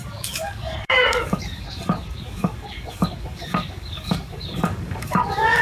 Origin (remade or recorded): remade